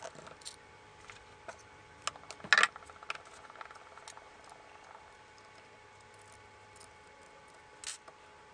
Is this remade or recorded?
recorded